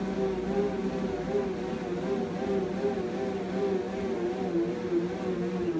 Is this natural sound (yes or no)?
yes